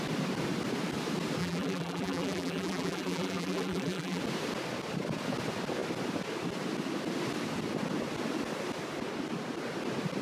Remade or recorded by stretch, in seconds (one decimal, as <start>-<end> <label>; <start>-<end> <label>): 0.0-1.4 recorded; 1.4-4.2 remade; 4.2-10.2 recorded